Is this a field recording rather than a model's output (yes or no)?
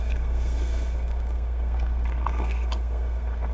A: no